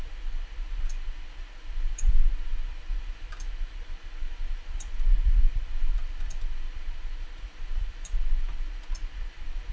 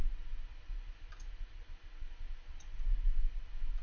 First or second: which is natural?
second